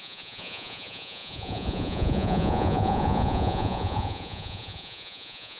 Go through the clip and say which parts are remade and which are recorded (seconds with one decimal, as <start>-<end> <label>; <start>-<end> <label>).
0.0-5.6 remade